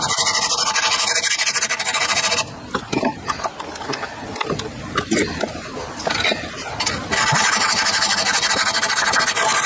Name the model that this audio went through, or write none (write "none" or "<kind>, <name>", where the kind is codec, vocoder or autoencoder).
none